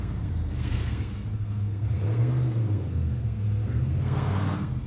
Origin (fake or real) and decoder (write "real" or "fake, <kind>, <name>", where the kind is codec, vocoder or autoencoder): fake, codec, SNAC